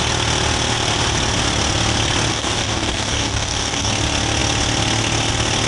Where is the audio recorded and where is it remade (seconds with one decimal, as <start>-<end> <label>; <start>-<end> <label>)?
0.0-2.3 recorded; 2.3-3.9 remade; 3.9-5.7 recorded